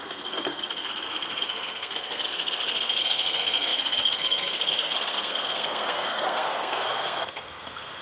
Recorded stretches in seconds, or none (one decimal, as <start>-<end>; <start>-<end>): none